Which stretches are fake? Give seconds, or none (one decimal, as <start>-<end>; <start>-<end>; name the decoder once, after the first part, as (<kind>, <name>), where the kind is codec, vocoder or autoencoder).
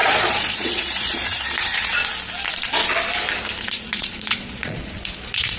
0.0-2.0 (vocoder, Vocos); 3.6-5.6